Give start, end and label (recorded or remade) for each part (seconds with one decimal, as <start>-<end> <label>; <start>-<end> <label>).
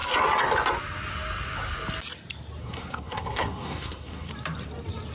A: 0.0-2.6 recorded; 2.6-4.3 remade; 4.3-5.1 recorded